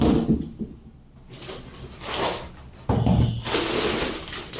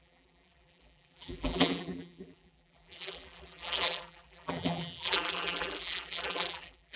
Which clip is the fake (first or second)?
second